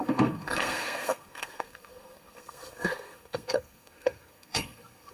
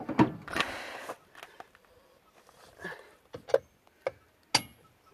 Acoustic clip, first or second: second